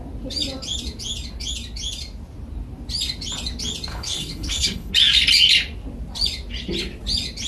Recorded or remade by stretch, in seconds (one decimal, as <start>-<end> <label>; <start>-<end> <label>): 0.0-3.9 recorded; 3.9-4.9 remade; 4.9-7.5 recorded